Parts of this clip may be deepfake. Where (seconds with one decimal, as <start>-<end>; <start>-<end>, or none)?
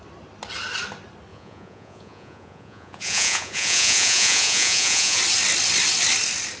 1.3-5.2